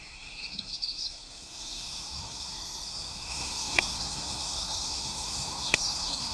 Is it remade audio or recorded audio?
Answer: remade